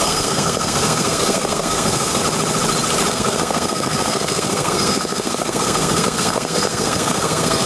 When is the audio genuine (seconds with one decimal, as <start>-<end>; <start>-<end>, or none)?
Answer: 2.2-3.1